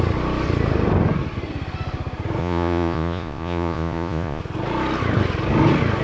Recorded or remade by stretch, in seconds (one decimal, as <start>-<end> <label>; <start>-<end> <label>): 0.0-2.4 recorded; 2.4-4.4 remade; 4.4-6.0 recorded